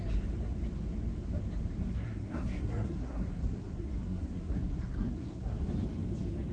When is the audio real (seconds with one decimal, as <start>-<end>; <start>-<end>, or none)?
0.0-1.8; 5.7-6.5